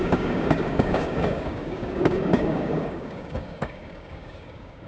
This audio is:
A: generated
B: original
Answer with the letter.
A